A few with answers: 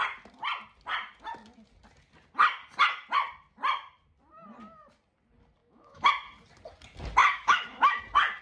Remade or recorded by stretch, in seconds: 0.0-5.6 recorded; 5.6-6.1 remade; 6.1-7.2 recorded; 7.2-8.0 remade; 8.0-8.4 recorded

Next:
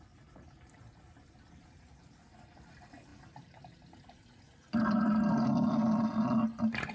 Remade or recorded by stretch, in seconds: 0.0-6.9 recorded

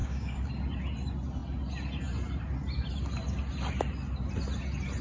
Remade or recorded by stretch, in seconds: 0.0-0.5 remade; 0.5-5.0 recorded

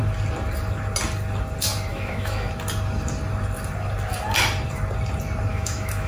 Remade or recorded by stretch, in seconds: 0.0-1.9 recorded; 1.9-2.5 remade; 2.5-5.5 recorded; 5.5-6.1 remade

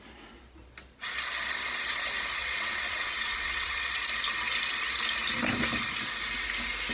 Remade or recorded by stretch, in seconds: 0.0-2.4 recorded; 2.4-3.9 remade; 3.9-6.9 recorded